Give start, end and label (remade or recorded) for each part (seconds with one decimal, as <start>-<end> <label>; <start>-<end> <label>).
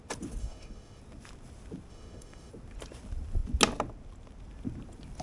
0.0-0.4 recorded; 0.4-1.0 remade; 1.0-1.9 recorded; 1.9-2.5 remade; 2.5-5.2 recorded